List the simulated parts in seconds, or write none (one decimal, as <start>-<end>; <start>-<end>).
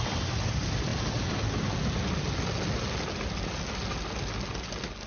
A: none